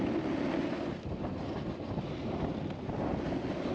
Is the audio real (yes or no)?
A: yes